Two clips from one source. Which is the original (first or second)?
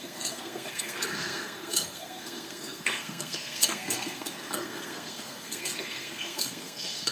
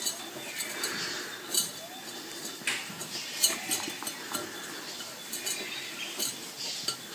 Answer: second